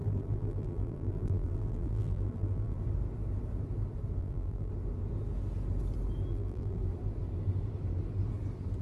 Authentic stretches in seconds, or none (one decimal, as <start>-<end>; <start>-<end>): 2.8-4.2; 4.7-6.3; 6.8-8.8